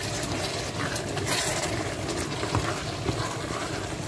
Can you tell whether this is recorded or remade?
recorded